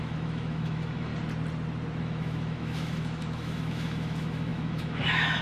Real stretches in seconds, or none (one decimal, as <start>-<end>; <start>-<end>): 1.1-2.0